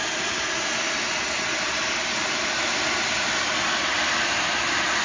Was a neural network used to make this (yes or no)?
no